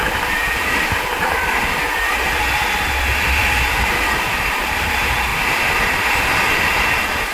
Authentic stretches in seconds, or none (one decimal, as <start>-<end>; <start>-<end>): 0.0-7.3